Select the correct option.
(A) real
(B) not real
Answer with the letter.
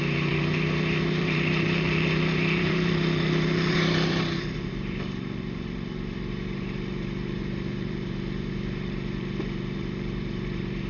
B